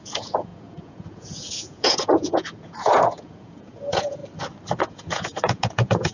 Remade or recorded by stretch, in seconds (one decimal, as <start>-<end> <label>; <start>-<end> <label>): 0.0-4.2 remade; 4.2-4.8 recorded; 4.8-6.1 remade